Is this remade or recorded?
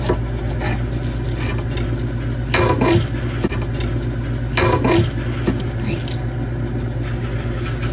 recorded